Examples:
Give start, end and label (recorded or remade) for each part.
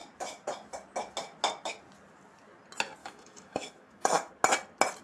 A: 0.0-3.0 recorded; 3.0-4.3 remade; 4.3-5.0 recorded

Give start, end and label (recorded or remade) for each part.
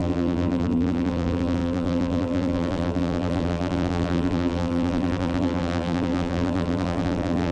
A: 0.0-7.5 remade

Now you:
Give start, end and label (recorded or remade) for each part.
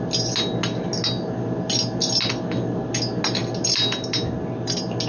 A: 0.0-5.1 recorded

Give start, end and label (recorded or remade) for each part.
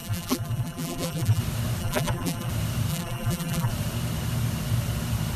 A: 0.0-1.4 remade; 1.4-1.8 recorded; 1.8-2.5 remade; 2.5-2.9 recorded; 2.9-3.7 remade; 3.7-5.4 recorded